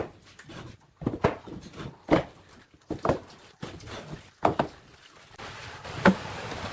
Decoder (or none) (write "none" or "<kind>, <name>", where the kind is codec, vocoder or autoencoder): none